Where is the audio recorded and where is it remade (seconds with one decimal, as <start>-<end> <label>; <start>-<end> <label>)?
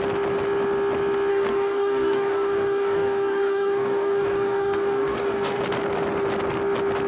0.0-1.3 recorded; 1.3-5.6 remade; 5.6-7.1 recorded